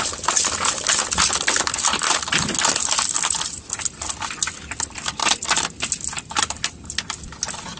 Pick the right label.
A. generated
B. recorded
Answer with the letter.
B